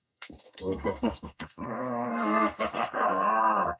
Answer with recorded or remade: remade